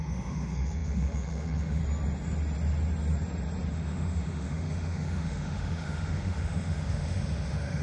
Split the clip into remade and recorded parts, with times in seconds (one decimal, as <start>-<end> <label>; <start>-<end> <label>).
0.0-1.8 remade; 1.8-3.7 recorded; 3.7-7.8 remade